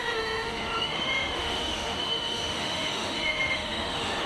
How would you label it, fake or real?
fake